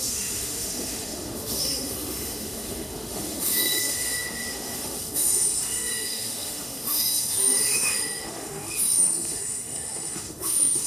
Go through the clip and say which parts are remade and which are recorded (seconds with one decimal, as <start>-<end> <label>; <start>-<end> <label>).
0.0-10.9 remade